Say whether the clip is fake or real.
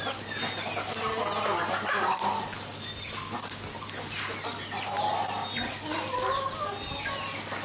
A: real